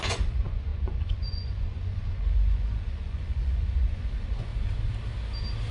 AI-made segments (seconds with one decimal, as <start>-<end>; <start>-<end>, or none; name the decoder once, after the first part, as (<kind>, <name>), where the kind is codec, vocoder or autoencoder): 0.0-4.5 (vocoder, Vocos)